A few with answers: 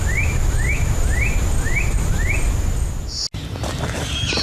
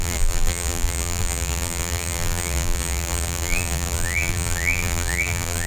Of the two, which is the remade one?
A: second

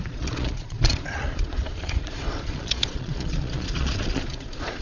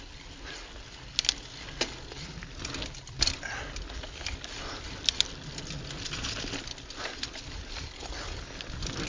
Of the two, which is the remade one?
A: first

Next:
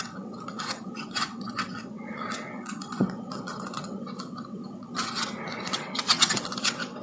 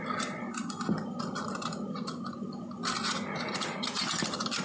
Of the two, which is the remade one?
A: first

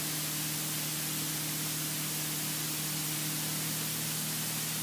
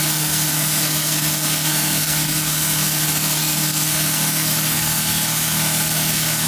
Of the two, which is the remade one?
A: second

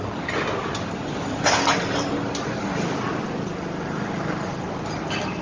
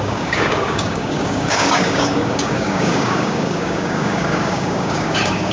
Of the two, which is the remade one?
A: second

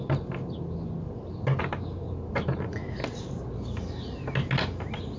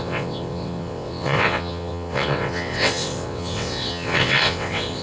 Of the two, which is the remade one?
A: second